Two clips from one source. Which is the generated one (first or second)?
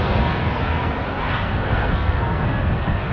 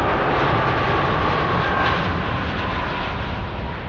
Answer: first